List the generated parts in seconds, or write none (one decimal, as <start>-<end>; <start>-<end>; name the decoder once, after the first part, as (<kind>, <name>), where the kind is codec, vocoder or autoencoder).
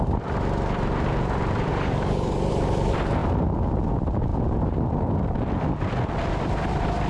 1.7-2.5 (codec, DAC)